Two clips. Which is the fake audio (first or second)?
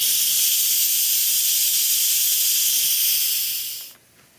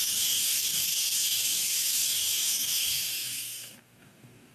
second